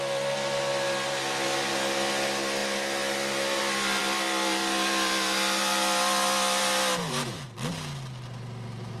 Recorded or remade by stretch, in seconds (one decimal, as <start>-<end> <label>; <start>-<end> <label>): 0.0-9.0 recorded